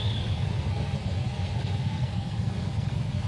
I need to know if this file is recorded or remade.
remade